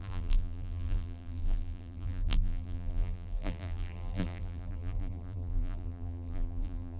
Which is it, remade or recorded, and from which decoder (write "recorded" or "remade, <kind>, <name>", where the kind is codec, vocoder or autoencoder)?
remade, vocoder, BigVGAN v2